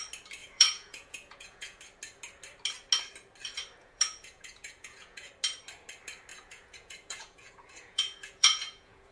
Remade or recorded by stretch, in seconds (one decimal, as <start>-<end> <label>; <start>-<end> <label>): 0.0-0.4 recorded; 0.4-1.8 remade; 1.8-3.8 recorded; 3.8-5.3 remade; 5.3-6.3 recorded; 6.3-9.1 remade